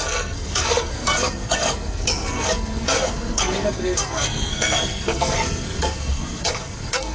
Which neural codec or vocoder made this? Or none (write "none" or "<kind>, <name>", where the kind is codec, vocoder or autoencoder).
codec, SNAC